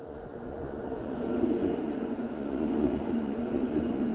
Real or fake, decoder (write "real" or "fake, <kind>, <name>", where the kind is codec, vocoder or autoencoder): fake, vocoder, Vocos